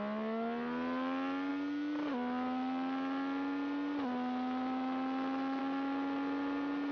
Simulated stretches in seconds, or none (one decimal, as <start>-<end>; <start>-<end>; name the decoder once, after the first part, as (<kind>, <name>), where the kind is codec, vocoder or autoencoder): none